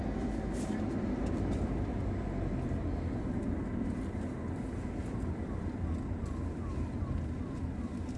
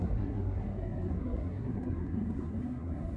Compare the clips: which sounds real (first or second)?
first